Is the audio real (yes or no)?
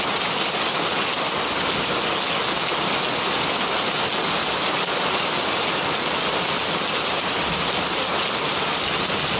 yes